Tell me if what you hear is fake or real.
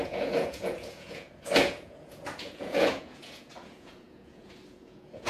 fake